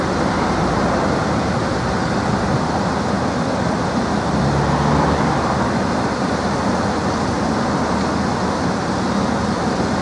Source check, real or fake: real